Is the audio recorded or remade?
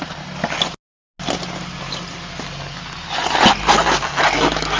recorded